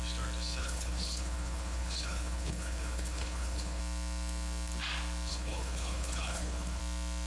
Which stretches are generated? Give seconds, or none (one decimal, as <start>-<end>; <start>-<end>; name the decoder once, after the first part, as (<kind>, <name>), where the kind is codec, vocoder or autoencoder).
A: 0.6-3.8 (codec, HILCodec); 5.3-6.8